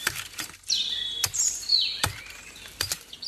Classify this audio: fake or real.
fake